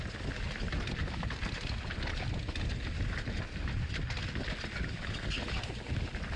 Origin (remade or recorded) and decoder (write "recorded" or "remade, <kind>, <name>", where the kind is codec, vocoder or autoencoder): recorded